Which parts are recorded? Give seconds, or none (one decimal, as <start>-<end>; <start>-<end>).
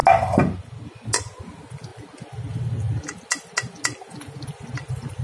0.0-5.2